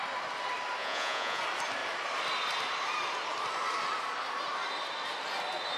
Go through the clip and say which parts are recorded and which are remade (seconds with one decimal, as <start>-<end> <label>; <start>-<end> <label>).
0.0-0.8 recorded; 0.8-1.4 remade; 1.4-5.8 recorded